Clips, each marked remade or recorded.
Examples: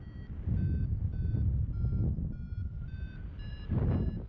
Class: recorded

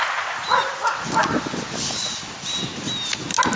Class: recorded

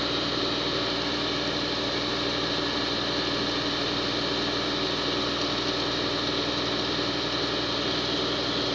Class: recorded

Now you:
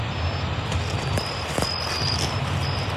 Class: recorded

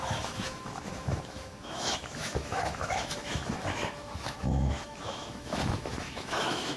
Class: remade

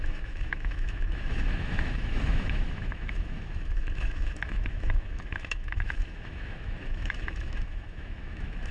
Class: remade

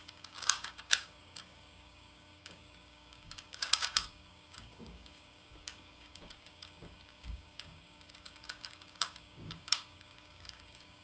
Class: remade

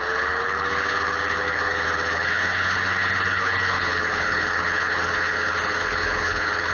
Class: remade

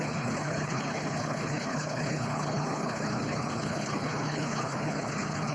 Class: remade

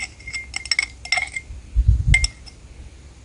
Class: recorded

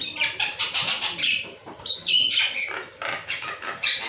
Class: remade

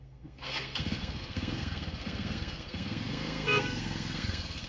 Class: remade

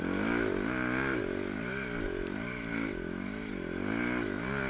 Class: recorded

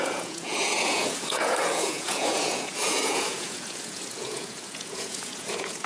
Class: remade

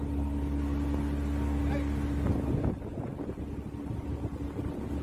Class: recorded